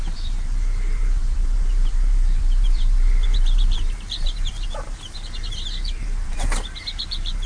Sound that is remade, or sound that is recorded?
remade